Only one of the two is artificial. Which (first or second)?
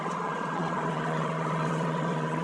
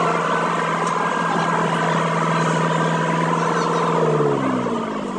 first